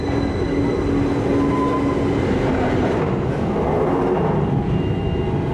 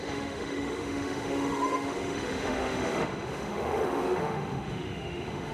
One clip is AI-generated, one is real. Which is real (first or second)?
first